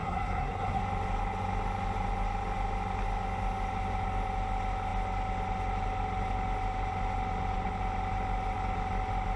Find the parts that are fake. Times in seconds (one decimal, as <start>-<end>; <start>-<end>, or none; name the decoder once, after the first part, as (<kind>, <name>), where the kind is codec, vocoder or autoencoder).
0.0-0.8 (codec, SNAC)